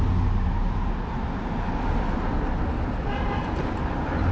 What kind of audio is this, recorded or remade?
recorded